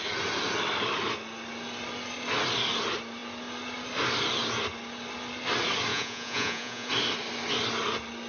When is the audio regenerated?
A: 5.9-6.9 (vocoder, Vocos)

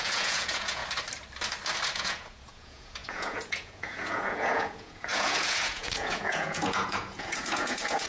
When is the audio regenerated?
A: 0.0-0.8 (vocoder, Vocos); 1.9-8.1

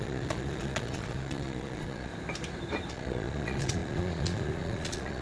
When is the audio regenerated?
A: 0.0-2.1 (vocoder, Vocos); 2.9-5.2

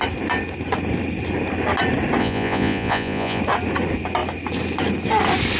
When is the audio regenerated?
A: 2.2-3.4 (vocoder, Vocos)

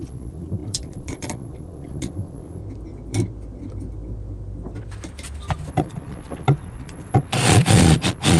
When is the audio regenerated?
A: 0.0-2.6 (vocoder, Vocos); 5.7-8.4

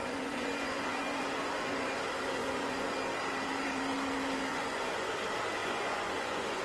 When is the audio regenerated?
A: 0.0-2.0 (vocoder, Vocos); 2.4-2.9; 4.5-5.1; 5.6-6.6

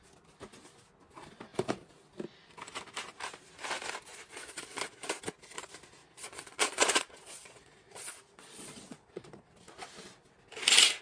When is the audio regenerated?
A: 4.3-5.2 (vocoder, Vocos); 6.0-9.5